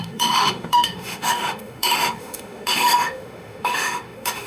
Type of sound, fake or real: fake